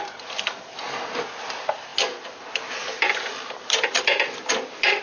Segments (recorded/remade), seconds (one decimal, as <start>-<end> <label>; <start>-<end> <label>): 0.0-5.0 recorded